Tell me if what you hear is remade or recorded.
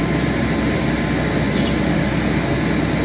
recorded